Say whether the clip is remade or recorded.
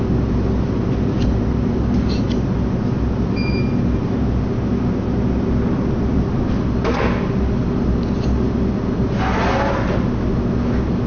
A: recorded